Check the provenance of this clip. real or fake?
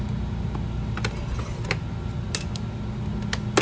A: real